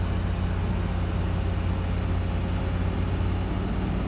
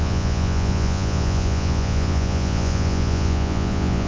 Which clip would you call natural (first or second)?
first